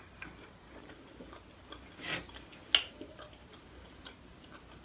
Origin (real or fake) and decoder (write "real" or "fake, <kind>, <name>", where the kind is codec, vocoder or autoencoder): real